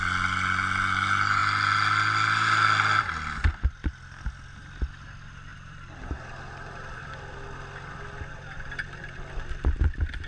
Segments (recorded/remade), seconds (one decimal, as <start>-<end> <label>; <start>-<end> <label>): 0.0-5.5 recorded; 5.5-7.1 remade; 7.1-10.3 recorded